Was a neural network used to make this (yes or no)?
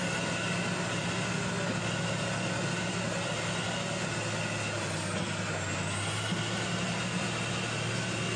no